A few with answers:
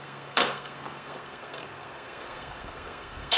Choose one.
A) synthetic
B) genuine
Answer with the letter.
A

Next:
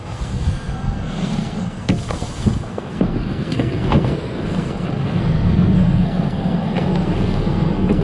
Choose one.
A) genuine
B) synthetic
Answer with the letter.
B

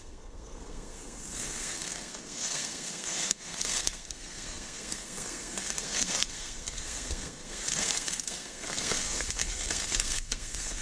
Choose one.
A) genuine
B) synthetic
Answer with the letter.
B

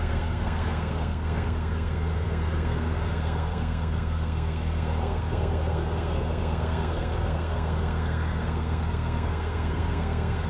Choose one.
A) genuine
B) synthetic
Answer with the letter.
B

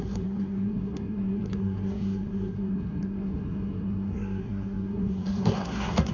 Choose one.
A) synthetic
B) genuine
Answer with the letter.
A